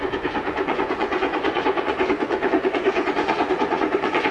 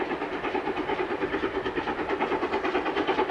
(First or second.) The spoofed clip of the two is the first